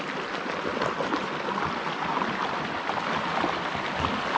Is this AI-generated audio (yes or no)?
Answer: no